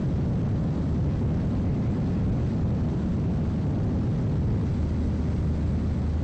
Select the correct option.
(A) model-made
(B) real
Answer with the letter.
B